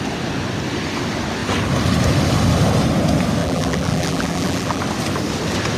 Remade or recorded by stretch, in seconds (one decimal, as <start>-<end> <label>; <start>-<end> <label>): 0.0-3.4 recorded; 3.4-4.8 remade; 4.8-5.8 recorded

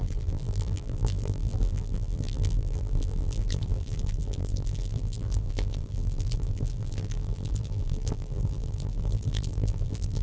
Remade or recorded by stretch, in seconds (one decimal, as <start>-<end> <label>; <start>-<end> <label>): 0.0-10.2 remade

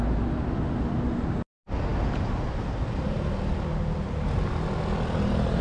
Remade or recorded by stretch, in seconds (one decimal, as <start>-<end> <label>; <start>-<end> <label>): 0.0-5.6 recorded

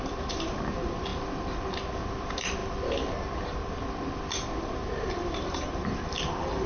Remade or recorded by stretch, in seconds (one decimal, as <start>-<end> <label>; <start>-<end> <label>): 0.0-1.1 remade; 1.1-1.9 recorded; 1.9-2.6 remade; 2.6-3.1 recorded; 3.1-3.6 remade; 3.6-4.5 recorded; 4.5-6.7 remade

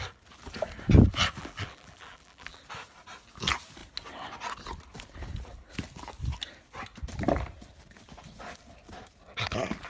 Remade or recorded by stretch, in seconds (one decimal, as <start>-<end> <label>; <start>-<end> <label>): 0.0-1.4 recorded; 1.4-2.6 remade; 2.6-9.9 recorded

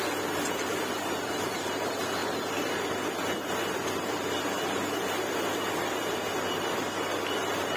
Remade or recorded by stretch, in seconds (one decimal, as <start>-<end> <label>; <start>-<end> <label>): 0.0-7.8 remade

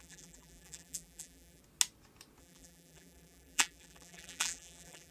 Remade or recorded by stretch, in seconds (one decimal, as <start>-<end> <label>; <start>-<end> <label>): 0.0-1.6 remade; 1.6-2.4 recorded; 2.4-5.1 remade